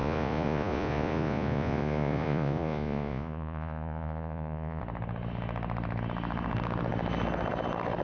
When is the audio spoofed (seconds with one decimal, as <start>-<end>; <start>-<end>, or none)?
0.0-4.8